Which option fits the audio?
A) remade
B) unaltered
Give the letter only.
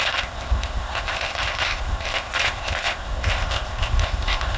A